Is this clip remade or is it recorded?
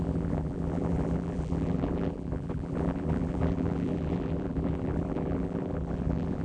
remade